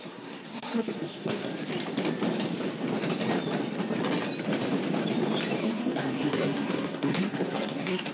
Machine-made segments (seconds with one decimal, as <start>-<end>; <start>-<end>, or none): 0.0-1.5; 5.6-8.1